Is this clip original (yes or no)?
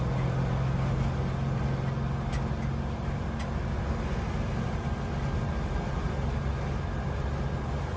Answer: yes